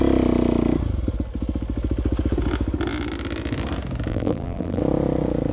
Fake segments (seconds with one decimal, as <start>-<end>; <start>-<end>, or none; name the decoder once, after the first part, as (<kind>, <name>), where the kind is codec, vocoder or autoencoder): 4.1-4.8 (vocoder, BigVGAN v2)